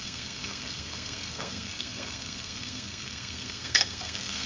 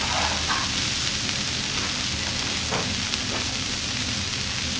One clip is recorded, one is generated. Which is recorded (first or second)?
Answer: second